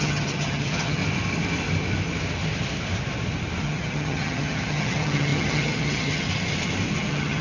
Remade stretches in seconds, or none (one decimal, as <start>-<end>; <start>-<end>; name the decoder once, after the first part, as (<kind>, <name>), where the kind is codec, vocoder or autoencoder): 0.0-1.0 (vocoder, HiFi-GAN); 3.6-6.3; 7.0-7.4